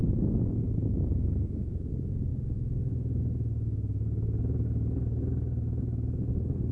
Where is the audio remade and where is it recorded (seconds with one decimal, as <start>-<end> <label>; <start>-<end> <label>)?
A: 0.0-1.9 remade; 1.9-2.3 recorded; 2.3-6.3 remade; 6.3-6.7 recorded